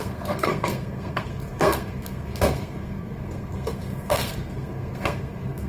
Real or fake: fake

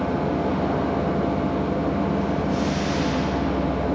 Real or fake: real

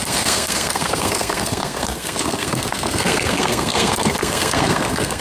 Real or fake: fake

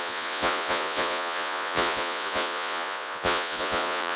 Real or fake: fake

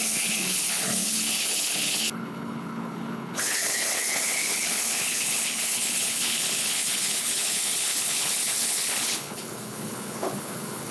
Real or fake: fake